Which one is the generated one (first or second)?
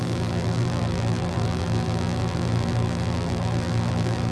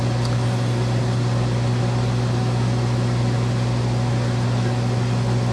first